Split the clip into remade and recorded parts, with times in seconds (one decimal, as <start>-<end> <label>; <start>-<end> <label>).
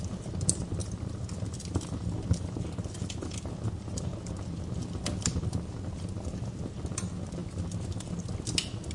0.0-8.9 recorded